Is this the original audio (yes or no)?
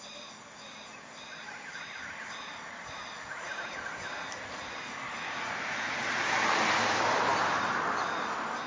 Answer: yes